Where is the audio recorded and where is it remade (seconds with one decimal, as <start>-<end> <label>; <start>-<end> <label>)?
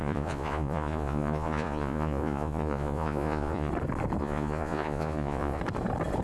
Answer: 0.0-3.7 remade; 3.7-4.2 recorded; 4.2-5.6 remade; 5.6-6.2 recorded